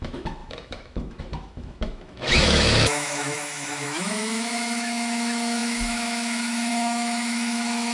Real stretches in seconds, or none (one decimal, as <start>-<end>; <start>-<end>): none